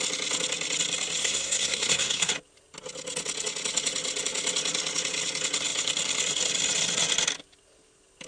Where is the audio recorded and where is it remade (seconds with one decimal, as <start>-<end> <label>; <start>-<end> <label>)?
0.0-1.2 recorded; 1.2-2.3 remade; 2.3-8.3 recorded